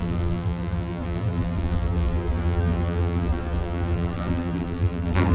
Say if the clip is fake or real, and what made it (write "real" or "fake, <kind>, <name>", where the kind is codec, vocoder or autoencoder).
fake, vocoder, BigVGAN v2